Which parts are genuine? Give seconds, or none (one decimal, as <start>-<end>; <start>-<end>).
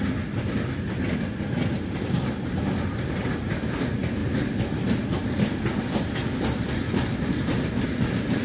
0.0-8.4